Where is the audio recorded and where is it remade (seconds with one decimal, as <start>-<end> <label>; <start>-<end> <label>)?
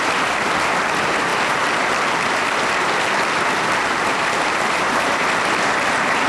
0.0-6.3 recorded